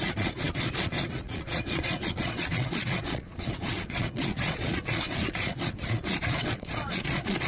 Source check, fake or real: fake